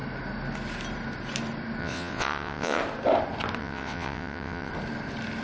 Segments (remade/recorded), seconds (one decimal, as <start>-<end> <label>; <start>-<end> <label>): 0.0-1.8 recorded; 1.8-2.8 remade; 2.8-3.6 recorded; 3.6-4.7 remade; 4.7-5.4 recorded